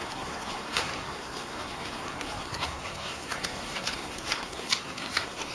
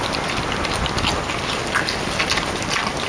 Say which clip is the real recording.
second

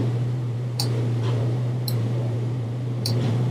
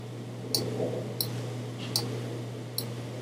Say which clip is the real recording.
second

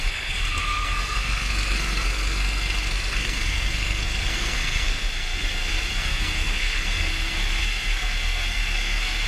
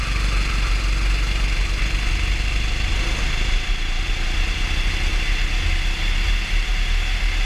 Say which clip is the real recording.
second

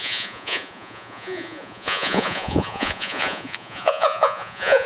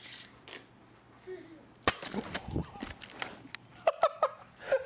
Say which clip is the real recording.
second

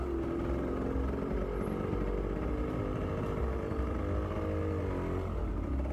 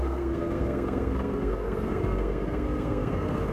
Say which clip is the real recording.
first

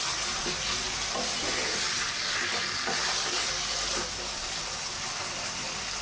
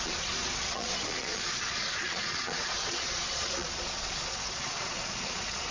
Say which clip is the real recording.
first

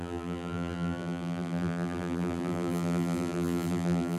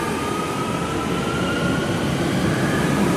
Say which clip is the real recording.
second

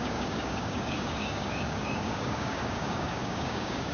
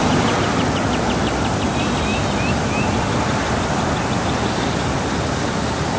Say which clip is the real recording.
second